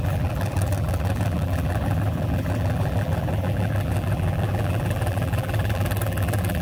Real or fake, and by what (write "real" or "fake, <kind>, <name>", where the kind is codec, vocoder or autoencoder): fake, vocoder, BigVGAN v2